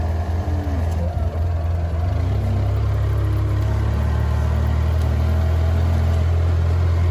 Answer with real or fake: real